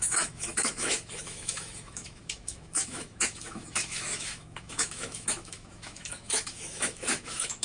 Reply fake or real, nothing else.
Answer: fake